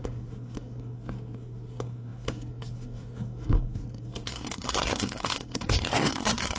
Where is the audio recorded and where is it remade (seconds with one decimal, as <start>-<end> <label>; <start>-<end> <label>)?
0.0-6.6 remade